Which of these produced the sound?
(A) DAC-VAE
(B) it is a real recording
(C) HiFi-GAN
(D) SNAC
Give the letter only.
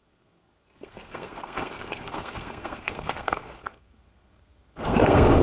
D